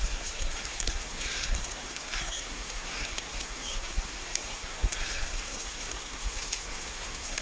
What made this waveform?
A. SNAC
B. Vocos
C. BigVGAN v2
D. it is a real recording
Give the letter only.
A